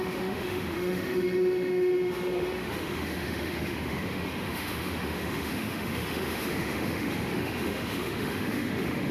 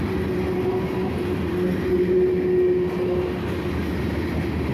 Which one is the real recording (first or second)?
second